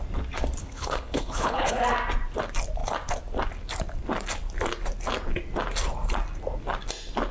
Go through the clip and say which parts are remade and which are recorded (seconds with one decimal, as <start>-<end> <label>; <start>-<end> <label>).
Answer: 0.0-0.6 recorded; 0.6-1.8 remade; 1.8-7.3 recorded